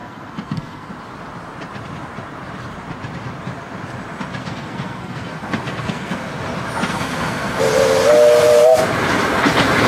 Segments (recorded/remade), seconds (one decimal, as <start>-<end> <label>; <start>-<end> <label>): 0.0-0.9 remade; 0.9-4.4 recorded; 4.4-6.3 remade; 6.3-6.9 recorded; 6.9-7.6 remade; 7.6-9.9 recorded